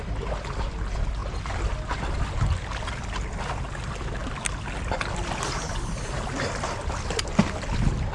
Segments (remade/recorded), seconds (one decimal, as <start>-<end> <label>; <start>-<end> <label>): 0.0-8.1 recorded